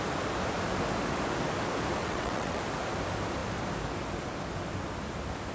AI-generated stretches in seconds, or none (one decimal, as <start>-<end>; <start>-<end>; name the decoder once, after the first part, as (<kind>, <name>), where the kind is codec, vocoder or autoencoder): 2.0-2.6 (vocoder, WaveNeXt)